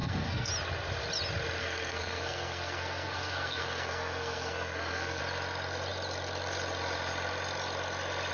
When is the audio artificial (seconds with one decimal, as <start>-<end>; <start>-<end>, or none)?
0.0-0.5; 1.6-5.2